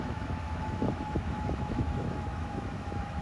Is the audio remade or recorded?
remade